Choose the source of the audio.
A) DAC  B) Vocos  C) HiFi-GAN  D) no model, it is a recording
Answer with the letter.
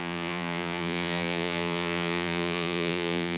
B